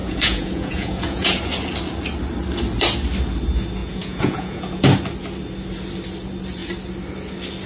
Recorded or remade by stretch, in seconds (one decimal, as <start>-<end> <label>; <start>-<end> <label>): 0.0-1.4 remade; 1.4-3.8 recorded; 3.8-4.8 remade; 4.8-7.7 recorded